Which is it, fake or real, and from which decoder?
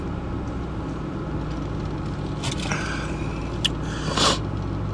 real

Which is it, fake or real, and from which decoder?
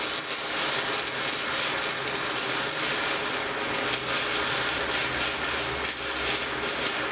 real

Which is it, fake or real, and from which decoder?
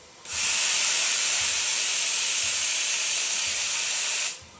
fake, vocoder, BigVGAN v2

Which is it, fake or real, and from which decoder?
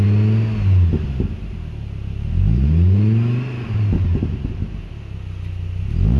real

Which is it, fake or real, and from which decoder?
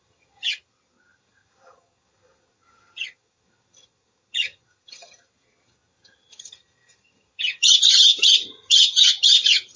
fake, vocoder, HiFi-GAN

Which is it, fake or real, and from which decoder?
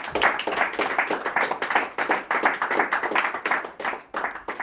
real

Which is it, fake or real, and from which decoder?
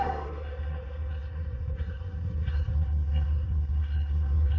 fake, codec, SNAC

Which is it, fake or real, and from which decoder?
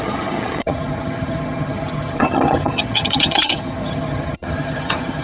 fake, vocoder, HiFi-GAN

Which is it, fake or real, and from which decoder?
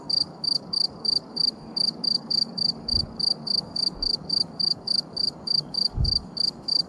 fake, codec, DAC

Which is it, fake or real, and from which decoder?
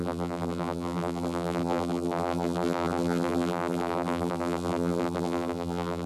fake, vocoder, BigVGAN v2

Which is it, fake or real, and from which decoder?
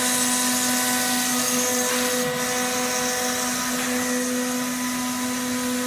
real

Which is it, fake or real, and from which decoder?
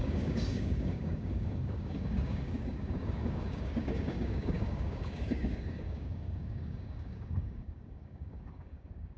fake, codec, DAC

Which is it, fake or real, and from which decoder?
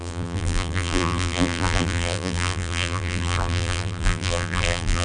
fake, vocoder, BigVGAN v2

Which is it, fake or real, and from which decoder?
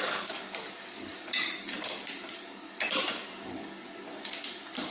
fake, codec, DAC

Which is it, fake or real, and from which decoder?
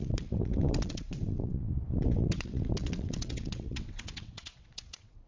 fake, vocoder, WaveNeXt